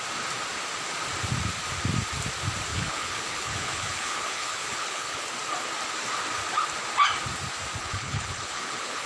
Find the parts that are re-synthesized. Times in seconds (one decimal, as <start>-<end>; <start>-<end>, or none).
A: 2.7-5.3; 7.8-9.1